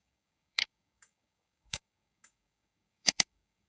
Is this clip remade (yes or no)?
yes